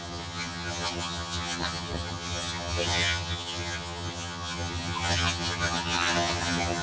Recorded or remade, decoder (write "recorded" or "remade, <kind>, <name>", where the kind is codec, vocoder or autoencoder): remade, vocoder, HiFi-GAN